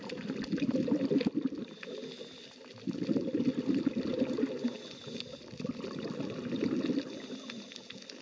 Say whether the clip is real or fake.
real